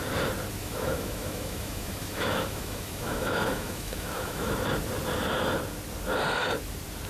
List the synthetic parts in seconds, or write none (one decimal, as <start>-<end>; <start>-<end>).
0.6-4.5